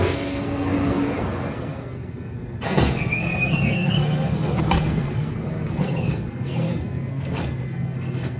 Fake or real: fake